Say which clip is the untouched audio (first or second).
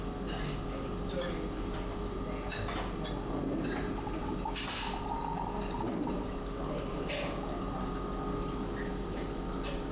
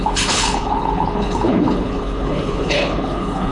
first